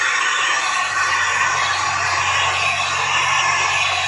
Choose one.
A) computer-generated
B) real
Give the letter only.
B